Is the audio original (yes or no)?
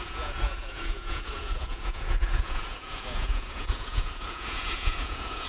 no